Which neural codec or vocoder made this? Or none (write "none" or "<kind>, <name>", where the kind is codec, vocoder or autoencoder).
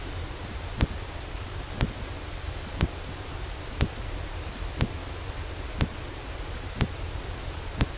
vocoder, BigVGAN v2